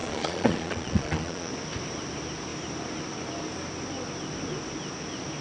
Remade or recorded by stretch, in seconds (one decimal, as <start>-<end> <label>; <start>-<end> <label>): 0.0-1.5 remade; 1.5-5.4 recorded